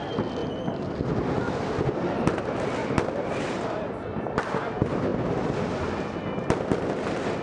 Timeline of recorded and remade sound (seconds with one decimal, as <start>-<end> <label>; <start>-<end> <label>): 0.0-2.8 recorded; 2.8-3.8 remade; 3.8-7.4 recorded